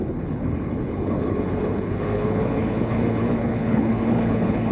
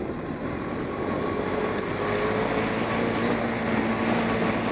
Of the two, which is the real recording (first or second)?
second